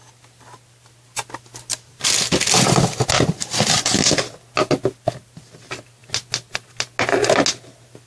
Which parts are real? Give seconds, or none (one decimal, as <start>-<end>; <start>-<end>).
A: 0.0-8.1